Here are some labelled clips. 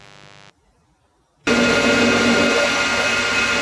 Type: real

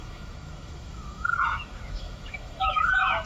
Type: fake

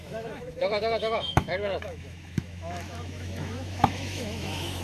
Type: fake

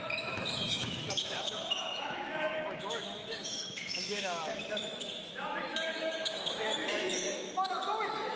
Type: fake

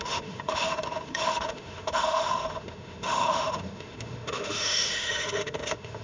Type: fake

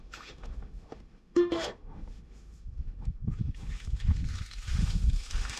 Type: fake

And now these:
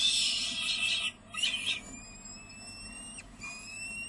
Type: real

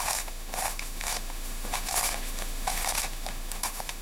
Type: fake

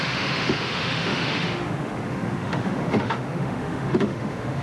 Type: fake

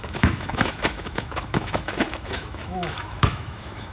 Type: fake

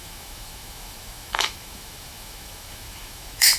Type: fake